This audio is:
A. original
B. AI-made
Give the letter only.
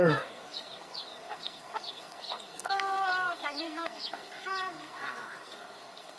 B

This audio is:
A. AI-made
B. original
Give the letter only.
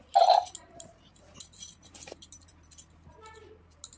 B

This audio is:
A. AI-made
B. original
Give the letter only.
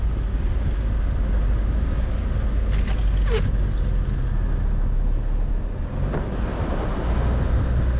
B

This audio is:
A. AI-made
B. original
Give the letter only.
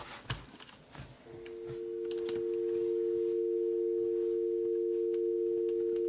B